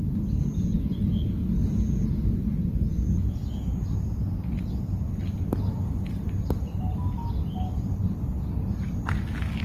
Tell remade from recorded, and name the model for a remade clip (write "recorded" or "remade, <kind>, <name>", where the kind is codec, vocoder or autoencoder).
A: recorded